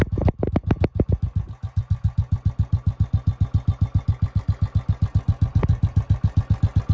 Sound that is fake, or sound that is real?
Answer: real